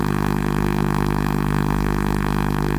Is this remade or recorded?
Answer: remade